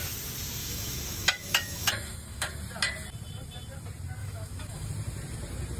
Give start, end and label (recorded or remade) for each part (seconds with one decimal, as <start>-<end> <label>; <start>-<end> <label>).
0.0-0.6 recorded; 0.6-2.6 remade; 2.6-4.2 recorded; 4.2-4.9 remade; 4.9-5.8 recorded